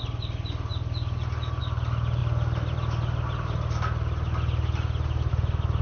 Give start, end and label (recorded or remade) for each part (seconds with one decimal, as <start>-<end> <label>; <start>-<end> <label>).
0.0-5.8 recorded